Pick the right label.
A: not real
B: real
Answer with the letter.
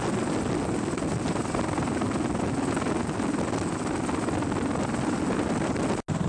B